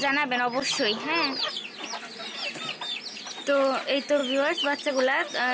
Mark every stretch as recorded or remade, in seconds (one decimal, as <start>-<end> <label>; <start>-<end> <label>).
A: 0.0-5.5 recorded